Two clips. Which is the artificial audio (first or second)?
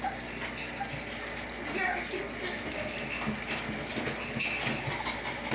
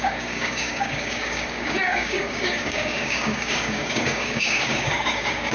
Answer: second